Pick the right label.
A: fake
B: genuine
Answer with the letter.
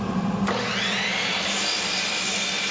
A